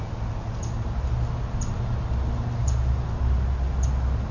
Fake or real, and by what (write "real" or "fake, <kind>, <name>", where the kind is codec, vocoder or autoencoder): real